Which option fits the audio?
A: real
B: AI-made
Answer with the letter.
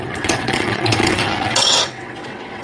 B